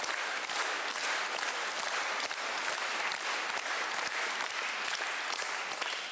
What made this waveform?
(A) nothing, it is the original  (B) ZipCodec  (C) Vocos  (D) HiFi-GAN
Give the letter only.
A